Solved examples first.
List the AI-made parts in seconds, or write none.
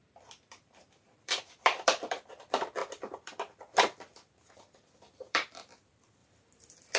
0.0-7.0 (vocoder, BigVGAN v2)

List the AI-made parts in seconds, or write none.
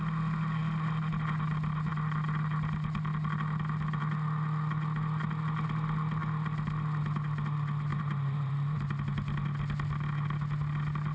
7.9-8.5 (vocoder, BigVGAN v2)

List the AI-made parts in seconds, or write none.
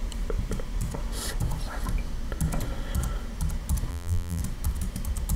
3.9-4.4 (vocoder, BigVGAN v2)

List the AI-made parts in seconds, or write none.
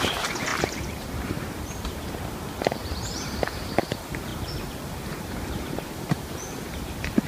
0.0-4.3 (vocoder, BigVGAN v2); 5.2-7.3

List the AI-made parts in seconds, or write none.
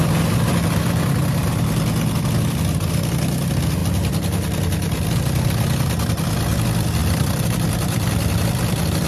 3.8-5.6 (vocoder, BigVGAN v2); 7.0-9.1